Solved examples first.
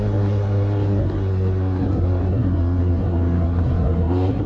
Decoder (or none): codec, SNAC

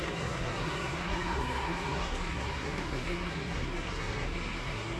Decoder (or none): codec, SNAC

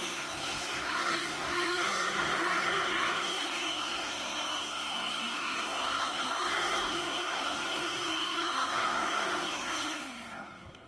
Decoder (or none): codec, SNAC